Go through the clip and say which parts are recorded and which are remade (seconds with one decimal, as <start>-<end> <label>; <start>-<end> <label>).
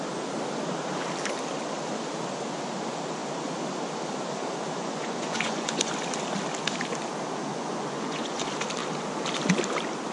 0.0-4.8 recorded; 4.8-5.9 remade; 5.9-7.5 recorded; 7.5-8.4 remade; 8.4-10.1 recorded